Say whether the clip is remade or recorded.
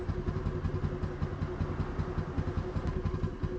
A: recorded